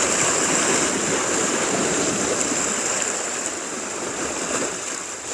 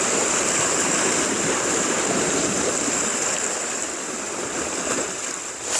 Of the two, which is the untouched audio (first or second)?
first